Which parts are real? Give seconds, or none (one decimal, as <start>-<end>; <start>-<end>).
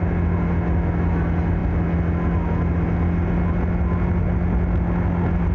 0.0-5.5